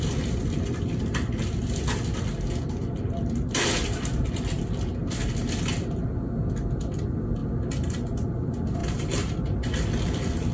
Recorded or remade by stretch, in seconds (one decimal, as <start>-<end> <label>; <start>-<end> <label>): 0.0-8.8 recorded; 8.8-9.4 remade; 9.4-10.5 recorded